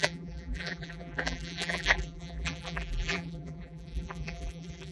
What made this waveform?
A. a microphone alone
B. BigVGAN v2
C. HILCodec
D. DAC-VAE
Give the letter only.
B